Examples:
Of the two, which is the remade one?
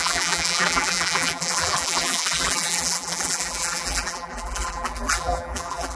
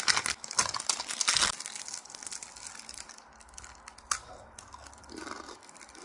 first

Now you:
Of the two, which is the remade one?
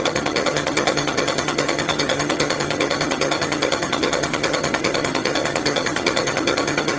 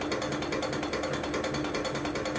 first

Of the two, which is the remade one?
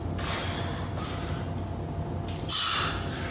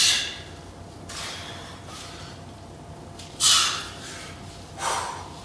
second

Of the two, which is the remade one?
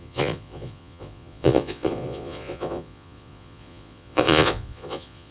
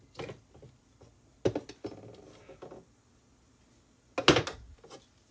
first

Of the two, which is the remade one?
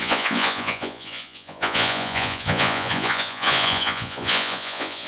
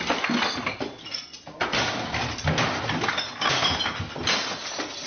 first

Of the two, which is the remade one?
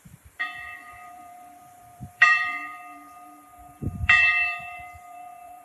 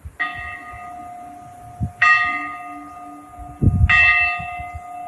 first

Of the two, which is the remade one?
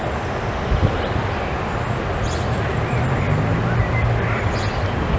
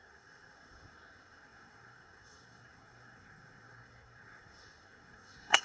second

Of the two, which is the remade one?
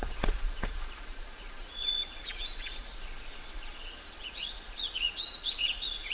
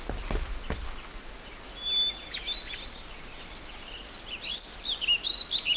first